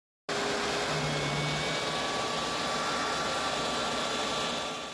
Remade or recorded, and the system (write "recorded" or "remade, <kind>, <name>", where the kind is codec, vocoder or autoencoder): recorded